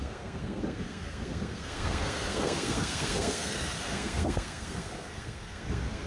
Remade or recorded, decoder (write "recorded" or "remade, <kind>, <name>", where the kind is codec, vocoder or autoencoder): remade, codec, SNAC